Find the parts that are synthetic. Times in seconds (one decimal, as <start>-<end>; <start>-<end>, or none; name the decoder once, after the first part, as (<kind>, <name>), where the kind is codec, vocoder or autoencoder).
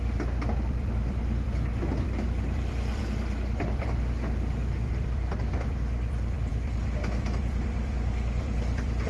0.0-3.0 (vocoder, BigVGAN v2); 3.6-9.1